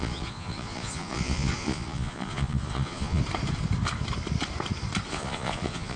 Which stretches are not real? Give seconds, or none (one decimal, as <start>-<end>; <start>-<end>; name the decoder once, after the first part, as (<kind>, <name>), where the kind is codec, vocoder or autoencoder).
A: 0.0-3.2 (vocoder, Vocos); 5.1-6.0